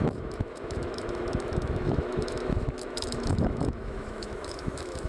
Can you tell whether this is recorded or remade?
remade